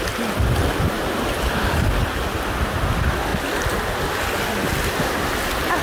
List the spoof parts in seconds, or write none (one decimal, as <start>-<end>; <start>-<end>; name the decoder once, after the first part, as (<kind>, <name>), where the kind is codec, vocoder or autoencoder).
none